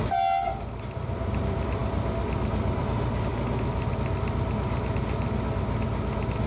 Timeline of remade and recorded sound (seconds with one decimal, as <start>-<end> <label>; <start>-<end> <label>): 0.0-6.5 recorded